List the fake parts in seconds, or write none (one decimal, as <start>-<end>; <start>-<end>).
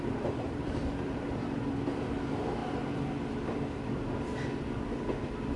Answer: 0.0-2.6; 3.3-5.6